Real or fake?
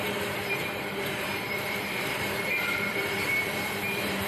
fake